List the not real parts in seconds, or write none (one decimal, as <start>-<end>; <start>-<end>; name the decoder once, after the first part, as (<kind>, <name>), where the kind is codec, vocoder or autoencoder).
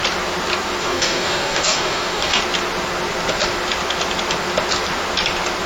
0.8-2.4 (codec, DAC)